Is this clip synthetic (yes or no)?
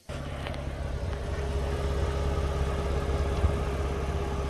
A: no